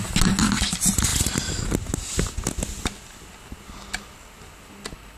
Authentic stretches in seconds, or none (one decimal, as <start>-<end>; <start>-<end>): 0.0-5.2